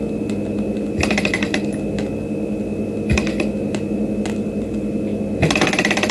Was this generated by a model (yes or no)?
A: no